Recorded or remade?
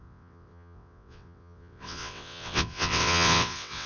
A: remade